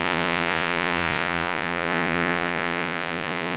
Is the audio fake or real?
fake